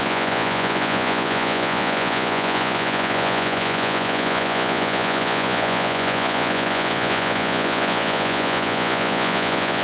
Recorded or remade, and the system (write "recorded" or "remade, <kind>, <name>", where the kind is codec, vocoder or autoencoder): remade, vocoder, Vocos